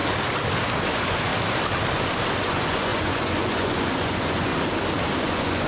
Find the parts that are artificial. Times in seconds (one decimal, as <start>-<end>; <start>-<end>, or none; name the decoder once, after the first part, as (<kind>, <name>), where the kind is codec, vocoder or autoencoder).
0.9-1.3 (vocoder, Vocos); 2.4-4.5; 5.2-5.7